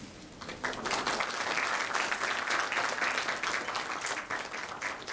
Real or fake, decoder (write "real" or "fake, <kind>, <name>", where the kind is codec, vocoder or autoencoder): real